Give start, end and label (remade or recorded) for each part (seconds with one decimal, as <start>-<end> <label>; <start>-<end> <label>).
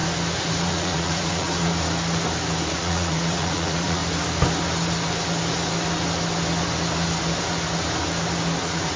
0.0-0.6 recorded; 0.6-1.7 remade; 1.7-2.7 recorded; 2.7-4.0 remade; 4.0-8.6 recorded; 8.6-9.0 remade